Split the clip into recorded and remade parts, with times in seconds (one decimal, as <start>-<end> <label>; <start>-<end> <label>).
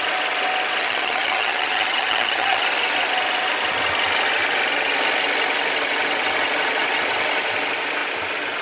0.0-0.8 recorded; 0.8-2.6 remade; 2.6-8.6 recorded